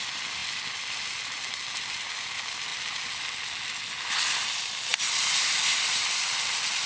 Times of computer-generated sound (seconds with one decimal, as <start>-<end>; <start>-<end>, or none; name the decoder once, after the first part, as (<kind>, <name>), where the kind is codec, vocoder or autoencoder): 4.9-6.0 (vocoder, BigVGAN v2)